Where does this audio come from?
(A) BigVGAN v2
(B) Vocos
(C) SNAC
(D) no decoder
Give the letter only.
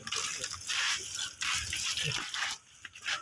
D